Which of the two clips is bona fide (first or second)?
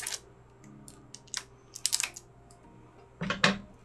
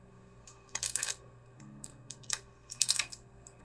first